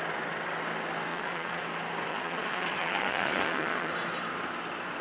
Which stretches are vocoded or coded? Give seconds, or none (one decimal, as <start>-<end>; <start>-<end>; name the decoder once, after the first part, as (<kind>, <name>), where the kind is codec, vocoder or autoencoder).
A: 1.1-1.6 (vocoder, Vocos); 2.1-3.9

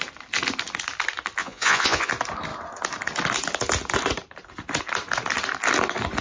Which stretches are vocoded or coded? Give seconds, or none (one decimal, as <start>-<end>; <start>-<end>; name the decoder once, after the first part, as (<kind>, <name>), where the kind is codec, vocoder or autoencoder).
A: 1.4-2.1 (vocoder, Vocos)

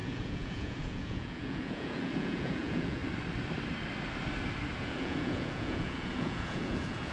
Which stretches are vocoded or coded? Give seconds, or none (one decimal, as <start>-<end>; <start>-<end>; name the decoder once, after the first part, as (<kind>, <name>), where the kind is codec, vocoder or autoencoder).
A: 0.0-3.0 (vocoder, Vocos); 4.8-7.1

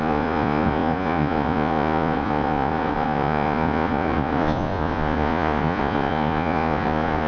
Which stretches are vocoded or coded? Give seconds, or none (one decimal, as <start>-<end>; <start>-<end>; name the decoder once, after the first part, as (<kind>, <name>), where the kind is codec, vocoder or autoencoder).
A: 0.0-7.3 (vocoder, Vocos)

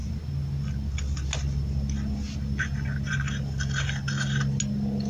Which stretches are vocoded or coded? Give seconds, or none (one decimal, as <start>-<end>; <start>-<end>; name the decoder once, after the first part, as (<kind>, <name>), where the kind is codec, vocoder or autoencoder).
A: none

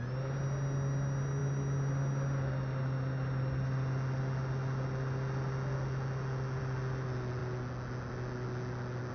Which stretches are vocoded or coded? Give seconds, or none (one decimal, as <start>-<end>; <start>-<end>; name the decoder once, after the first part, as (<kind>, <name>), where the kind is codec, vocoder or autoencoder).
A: none